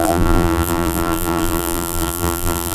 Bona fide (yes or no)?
no